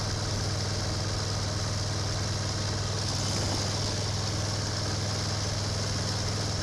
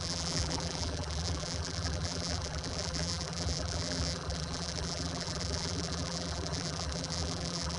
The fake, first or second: second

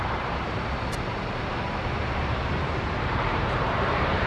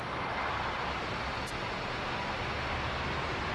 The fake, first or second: first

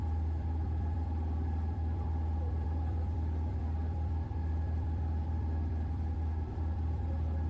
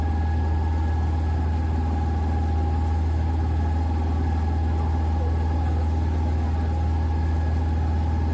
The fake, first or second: first